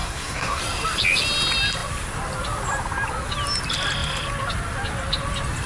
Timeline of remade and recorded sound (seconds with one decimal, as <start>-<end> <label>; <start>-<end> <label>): 0.0-0.6 remade; 0.6-5.7 recorded